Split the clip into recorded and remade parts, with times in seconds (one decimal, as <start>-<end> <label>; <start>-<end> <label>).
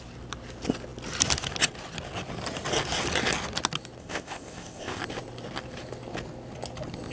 0.0-4.0 recorded; 4.0-5.0 remade; 5.0-7.1 recorded